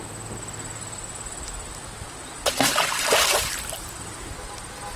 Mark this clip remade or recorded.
recorded